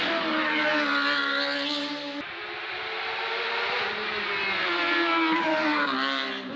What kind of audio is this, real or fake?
real